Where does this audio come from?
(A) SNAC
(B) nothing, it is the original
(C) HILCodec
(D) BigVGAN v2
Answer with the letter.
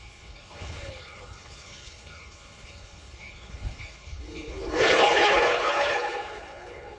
C